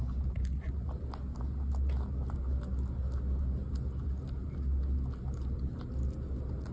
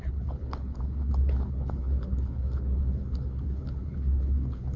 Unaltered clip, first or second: first